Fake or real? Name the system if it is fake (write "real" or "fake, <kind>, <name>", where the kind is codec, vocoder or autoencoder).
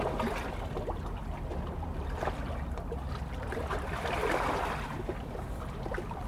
real